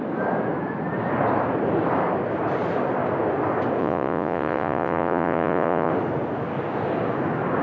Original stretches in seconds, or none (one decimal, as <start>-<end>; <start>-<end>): 0.0-3.8; 5.9-7.6